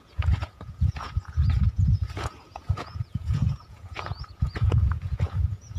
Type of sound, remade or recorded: remade